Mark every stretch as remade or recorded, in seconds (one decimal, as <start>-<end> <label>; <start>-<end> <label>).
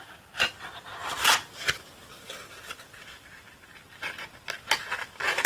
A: 0.0-5.5 recorded